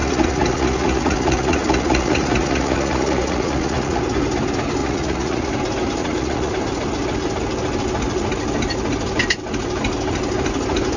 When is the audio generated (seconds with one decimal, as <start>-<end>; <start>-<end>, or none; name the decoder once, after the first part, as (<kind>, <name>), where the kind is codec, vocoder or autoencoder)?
0.0-4.0 (vocoder, Vocos); 4.8-5.5; 6.0-6.5